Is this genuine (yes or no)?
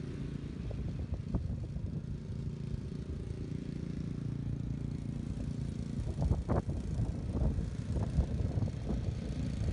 yes